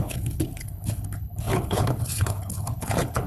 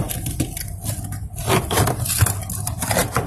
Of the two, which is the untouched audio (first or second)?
second